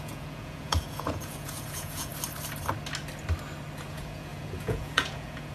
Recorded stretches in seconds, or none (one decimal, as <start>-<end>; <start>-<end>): 2.1-3.9